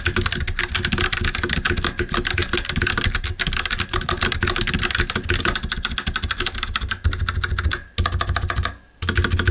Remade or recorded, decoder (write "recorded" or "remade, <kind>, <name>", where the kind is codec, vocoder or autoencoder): recorded